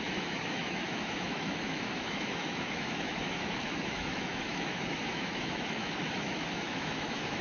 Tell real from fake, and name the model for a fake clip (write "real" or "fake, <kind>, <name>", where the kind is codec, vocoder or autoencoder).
fake, autoencoder, DAC-VAE